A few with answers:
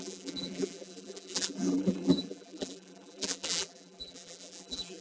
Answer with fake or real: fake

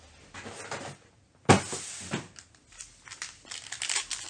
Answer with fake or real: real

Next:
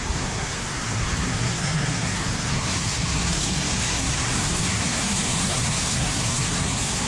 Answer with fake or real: fake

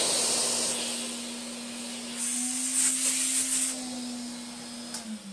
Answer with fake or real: real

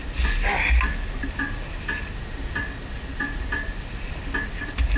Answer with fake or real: real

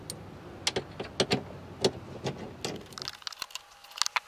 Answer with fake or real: real